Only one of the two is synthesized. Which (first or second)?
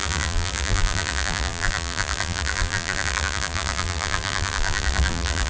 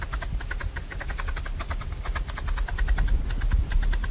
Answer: first